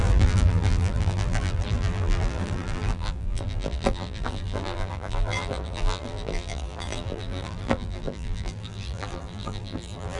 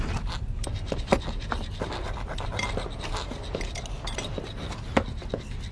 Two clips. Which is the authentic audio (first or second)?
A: second